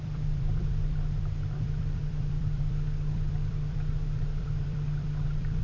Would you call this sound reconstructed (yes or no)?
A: yes